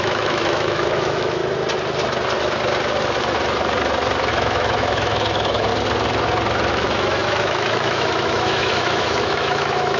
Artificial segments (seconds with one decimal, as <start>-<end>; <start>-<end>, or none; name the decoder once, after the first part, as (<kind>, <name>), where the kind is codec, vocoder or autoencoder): 0.0-1.4 (autoencoder, DAC-VAE); 4.3-5.7; 6.7-10.0